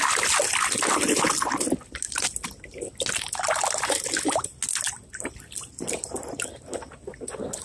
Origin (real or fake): real